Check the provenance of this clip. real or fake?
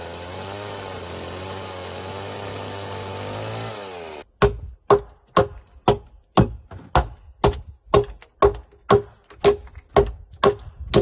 real